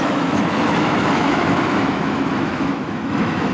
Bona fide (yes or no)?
no